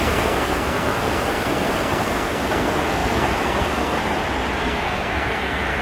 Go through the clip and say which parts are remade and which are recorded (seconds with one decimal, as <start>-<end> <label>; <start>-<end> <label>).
0.0-4.0 remade; 4.0-4.6 recorded; 4.6-5.8 remade